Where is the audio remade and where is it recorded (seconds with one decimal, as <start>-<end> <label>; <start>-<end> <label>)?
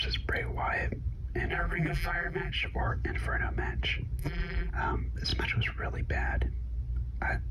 0.0-1.5 recorded; 1.5-2.5 remade; 2.5-4.2 recorded; 4.2-4.7 remade; 4.7-7.5 recorded